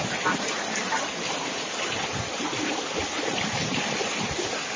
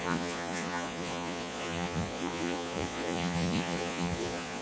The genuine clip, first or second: first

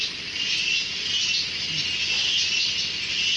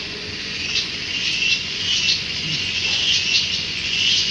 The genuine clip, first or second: first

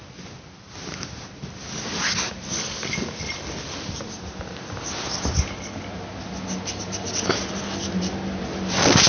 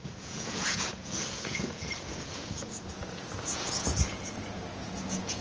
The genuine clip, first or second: first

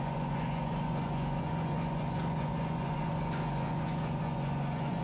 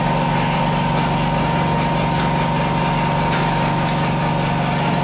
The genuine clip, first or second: second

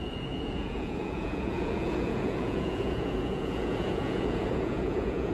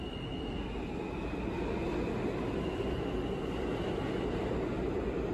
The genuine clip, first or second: second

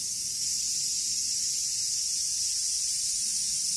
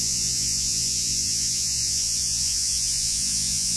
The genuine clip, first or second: first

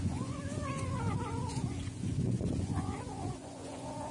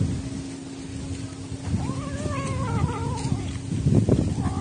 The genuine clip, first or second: second